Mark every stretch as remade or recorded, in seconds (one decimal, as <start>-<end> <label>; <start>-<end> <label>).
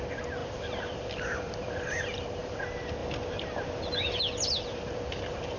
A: 0.0-0.4 recorded; 0.4-2.6 remade; 2.6-4.7 recorded; 4.7-5.6 remade